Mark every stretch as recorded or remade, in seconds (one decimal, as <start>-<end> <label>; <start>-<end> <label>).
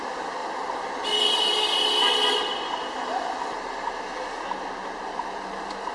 0.0-0.4 recorded; 0.4-3.9 remade; 3.9-5.9 recorded